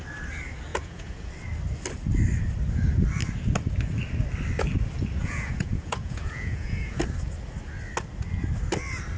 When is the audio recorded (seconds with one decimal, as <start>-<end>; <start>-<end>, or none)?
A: 0.0-0.7; 1.3-5.2; 7.0-9.2